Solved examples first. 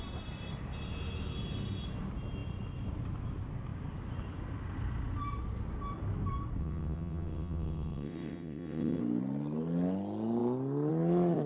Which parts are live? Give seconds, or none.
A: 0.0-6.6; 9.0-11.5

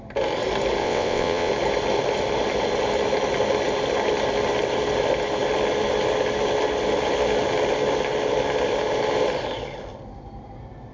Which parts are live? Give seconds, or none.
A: 0.0-0.8; 1.5-10.9

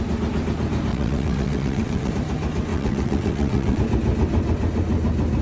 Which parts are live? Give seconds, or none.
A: 0.0-0.9; 2.1-2.7; 3.8-5.4

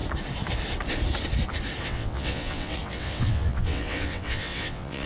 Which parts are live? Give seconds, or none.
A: 0.0-1.8

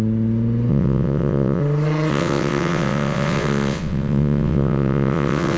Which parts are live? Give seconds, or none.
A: 0.0-0.7; 1.6-2.1

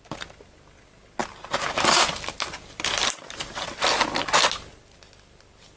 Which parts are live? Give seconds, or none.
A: 0.0-5.8

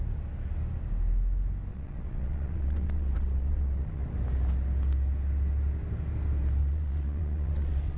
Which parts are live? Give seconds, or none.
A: 0.0-1.7; 4.0-6.6

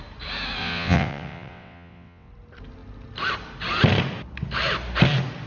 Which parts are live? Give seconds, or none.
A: 0.0-0.6; 2.3-5.5